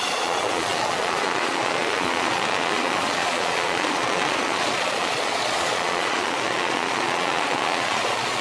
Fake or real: fake